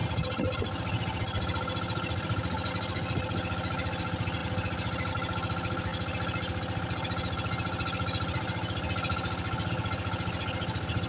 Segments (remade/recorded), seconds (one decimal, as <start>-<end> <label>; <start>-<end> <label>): 0.0-11.1 recorded